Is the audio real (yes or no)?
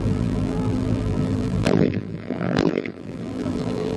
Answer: no